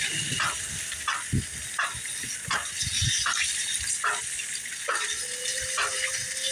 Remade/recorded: recorded